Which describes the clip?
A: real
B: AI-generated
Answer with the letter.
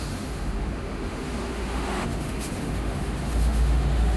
B